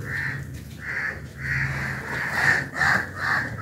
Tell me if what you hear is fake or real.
real